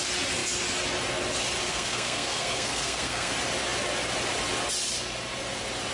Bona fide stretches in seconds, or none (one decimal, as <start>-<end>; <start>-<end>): 0.0-1.7; 3.3-5.9